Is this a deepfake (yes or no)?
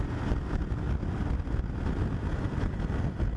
no